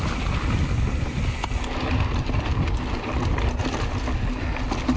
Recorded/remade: recorded